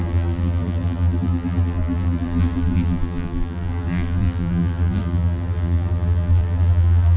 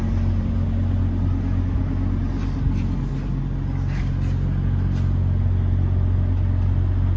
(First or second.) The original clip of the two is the second